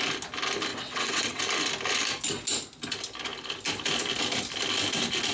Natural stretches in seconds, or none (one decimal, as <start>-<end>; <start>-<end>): 0.0-0.7; 1.4-5.3